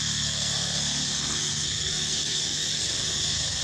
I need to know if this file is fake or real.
fake